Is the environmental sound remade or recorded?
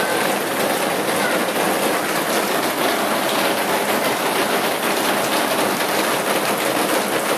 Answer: recorded